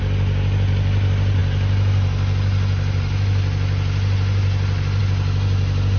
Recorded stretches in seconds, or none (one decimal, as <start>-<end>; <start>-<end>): 0.0-6.0